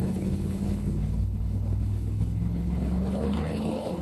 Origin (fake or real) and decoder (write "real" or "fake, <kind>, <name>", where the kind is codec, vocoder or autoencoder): fake, codec, HILCodec